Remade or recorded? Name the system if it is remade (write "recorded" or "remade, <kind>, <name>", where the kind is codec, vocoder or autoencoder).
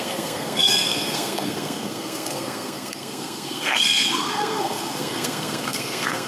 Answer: remade, codec, SNAC